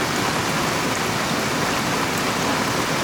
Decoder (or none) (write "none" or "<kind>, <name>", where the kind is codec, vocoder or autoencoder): none